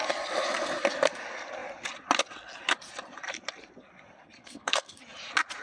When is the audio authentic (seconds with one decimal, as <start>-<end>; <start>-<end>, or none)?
0.0-4.4; 5.0-5.6